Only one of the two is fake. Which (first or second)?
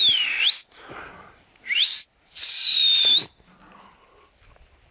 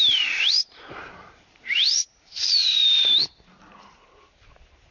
second